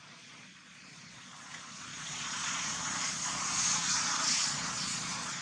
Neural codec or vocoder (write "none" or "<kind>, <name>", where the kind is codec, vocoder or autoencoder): vocoder, Vocos